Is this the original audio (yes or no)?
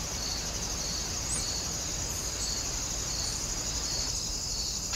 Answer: yes